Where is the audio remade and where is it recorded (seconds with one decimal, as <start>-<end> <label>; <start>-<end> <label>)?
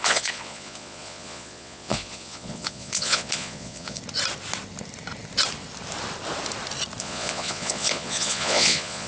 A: 0.0-4.0 remade; 4.0-7.0 recorded; 7.0-9.1 remade